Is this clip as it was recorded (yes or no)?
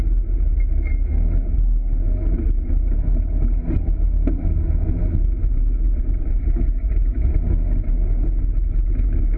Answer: yes